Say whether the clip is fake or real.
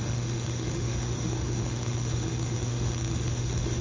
fake